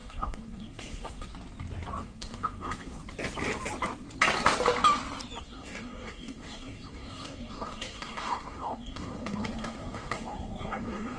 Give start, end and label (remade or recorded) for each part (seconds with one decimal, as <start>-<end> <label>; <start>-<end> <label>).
0.0-1.3 remade; 1.3-2.0 recorded; 2.0-3.0 remade; 3.0-5.4 recorded; 5.4-11.2 remade